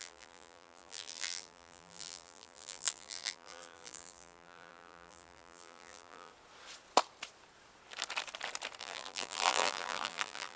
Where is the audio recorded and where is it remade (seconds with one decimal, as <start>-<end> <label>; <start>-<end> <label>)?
0.0-6.3 remade; 6.3-8.8 recorded; 8.8-10.6 remade